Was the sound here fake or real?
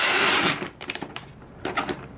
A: fake